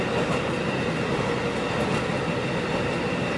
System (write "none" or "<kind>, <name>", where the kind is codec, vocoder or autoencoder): none